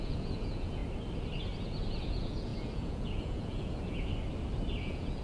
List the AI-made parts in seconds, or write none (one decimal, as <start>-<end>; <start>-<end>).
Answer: 0.0-0.8; 1.9-4.1; 4.8-5.2